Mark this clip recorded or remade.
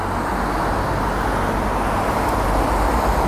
recorded